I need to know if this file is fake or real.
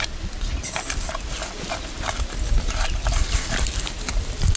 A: real